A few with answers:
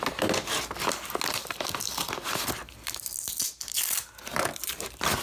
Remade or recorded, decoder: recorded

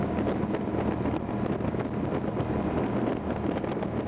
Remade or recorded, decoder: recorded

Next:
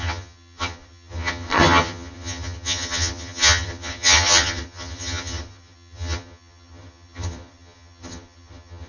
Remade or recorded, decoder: remade, vocoder, HiFi-GAN